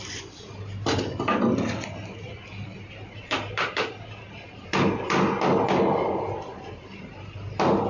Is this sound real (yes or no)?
yes